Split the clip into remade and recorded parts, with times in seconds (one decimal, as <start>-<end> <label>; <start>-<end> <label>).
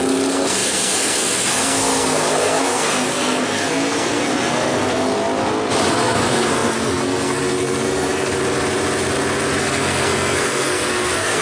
0.0-5.1 remade; 5.1-5.9 recorded; 5.9-8.3 remade; 8.3-9.6 recorded; 9.6-11.4 remade